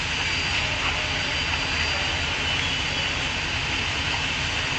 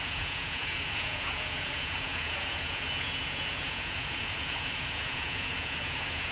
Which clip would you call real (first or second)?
first